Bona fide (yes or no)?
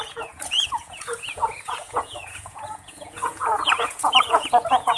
no